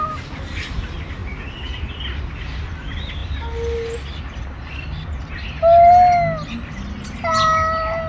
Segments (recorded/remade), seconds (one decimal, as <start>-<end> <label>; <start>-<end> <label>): 0.0-8.1 recorded